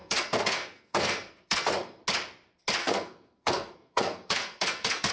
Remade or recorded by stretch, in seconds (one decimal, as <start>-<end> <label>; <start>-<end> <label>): 0.0-2.0 remade; 2.0-2.8 recorded; 2.8-5.1 remade